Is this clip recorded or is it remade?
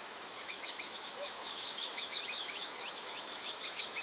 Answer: remade